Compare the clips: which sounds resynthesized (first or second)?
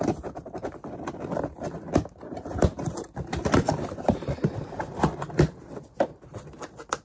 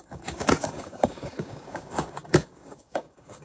second